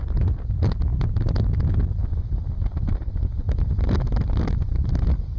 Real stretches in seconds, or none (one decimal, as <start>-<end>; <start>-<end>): 0.0-5.4